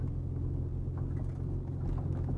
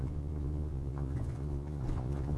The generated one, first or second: second